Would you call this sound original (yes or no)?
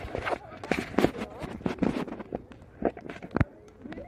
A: yes